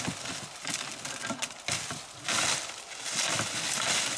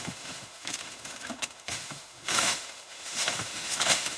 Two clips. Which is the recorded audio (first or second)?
first